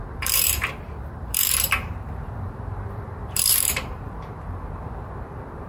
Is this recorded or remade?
remade